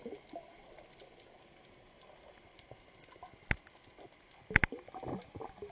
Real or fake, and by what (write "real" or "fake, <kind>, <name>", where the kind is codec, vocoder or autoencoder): real